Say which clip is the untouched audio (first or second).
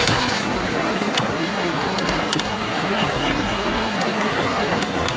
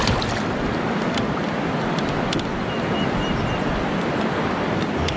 second